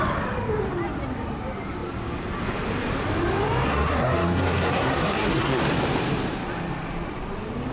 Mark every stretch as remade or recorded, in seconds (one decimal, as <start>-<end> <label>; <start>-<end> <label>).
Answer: 0.0-3.7 recorded; 3.7-5.6 remade; 5.6-7.7 recorded